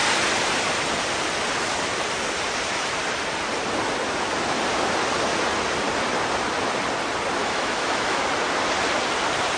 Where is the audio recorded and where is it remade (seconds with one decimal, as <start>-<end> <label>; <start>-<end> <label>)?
0.0-7.4 recorded; 7.4-8.2 remade; 8.2-9.6 recorded